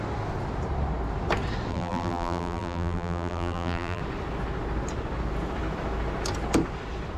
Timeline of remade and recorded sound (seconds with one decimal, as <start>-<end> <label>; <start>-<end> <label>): 0.0-1.7 recorded; 1.7-4.0 remade; 4.0-7.2 recorded